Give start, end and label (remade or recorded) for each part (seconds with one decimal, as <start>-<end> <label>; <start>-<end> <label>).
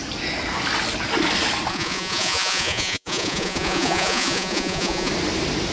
0.0-1.7 recorded; 1.7-5.1 remade; 5.1-5.7 recorded